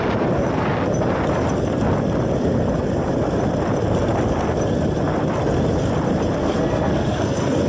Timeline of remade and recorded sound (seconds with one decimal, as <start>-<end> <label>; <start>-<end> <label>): 0.0-6.4 recorded; 6.4-7.7 remade